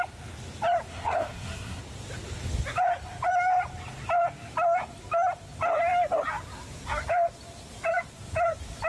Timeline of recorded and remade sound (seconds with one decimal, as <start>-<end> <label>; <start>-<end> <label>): 0.0-0.9 recorded; 0.9-1.8 remade; 1.8-8.9 recorded